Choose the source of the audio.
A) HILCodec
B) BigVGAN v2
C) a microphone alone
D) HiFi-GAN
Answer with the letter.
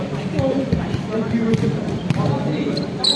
B